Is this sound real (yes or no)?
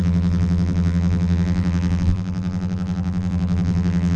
no